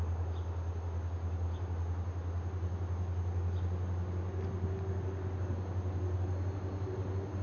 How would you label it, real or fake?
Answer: real